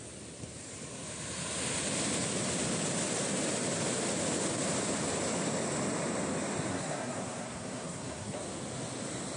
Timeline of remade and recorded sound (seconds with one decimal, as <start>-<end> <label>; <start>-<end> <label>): 0.0-6.7 recorded; 6.7-8.4 remade; 8.4-9.4 recorded